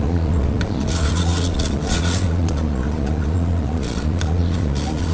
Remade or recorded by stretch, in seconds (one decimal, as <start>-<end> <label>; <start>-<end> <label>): 0.0-5.1 remade